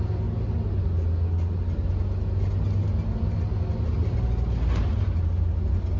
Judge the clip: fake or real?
real